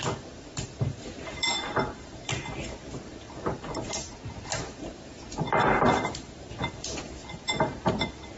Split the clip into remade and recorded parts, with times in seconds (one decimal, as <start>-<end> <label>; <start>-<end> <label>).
0.0-2.3 remade; 2.3-2.9 recorded; 2.9-8.4 remade